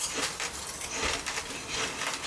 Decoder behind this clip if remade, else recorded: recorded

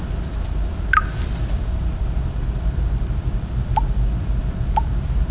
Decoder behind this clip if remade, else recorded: remade, vocoder, BigVGAN v2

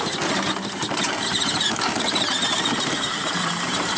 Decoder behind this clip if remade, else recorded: remade, vocoder, BigVGAN v2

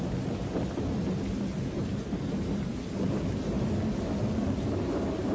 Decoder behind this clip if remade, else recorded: recorded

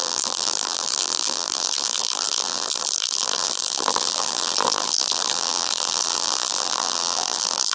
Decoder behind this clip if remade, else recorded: remade, vocoder, BigVGAN v2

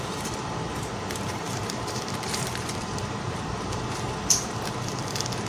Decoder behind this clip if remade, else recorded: remade, vocoder, BigVGAN v2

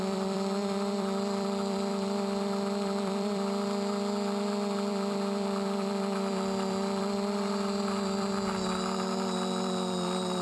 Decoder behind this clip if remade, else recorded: remade, vocoder, BigVGAN v2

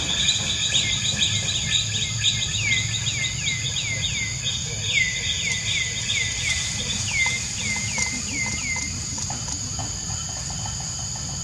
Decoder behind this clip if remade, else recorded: recorded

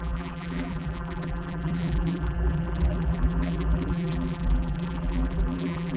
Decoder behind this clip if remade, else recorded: remade, vocoder, BigVGAN v2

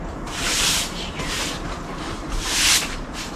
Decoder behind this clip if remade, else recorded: remade, vocoder, BigVGAN v2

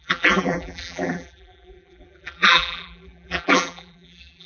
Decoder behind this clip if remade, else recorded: remade, vocoder, BigVGAN v2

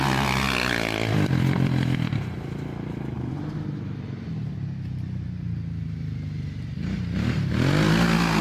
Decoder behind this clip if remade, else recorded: recorded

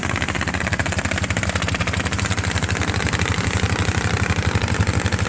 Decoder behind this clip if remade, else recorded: remade, vocoder, BigVGAN v2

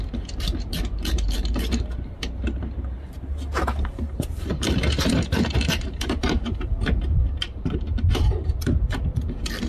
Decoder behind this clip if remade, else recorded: remade, vocoder, BigVGAN v2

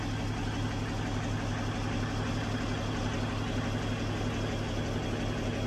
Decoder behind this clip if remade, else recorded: recorded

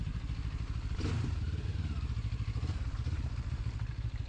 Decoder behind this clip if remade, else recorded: remade, vocoder, BigVGAN v2